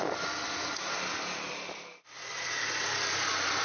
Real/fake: real